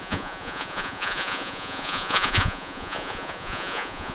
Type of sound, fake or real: fake